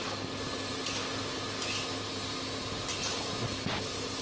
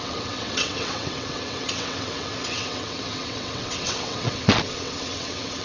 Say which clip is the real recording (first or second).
first